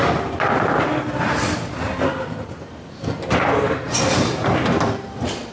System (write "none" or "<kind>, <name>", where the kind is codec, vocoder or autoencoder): none